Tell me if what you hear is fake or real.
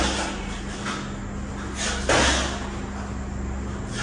real